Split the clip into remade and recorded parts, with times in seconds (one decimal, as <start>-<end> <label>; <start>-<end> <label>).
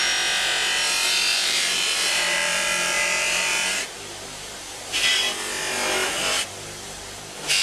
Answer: 0.0-1.3 recorded; 1.3-5.1 remade; 5.1-7.6 recorded